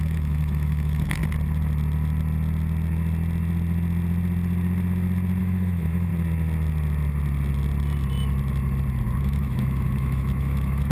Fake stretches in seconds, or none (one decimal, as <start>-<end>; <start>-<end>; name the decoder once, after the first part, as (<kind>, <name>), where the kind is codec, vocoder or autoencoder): 0.0-1.2 (autoencoder, DAC-VAE); 5.4-6.1; 9.2-10.9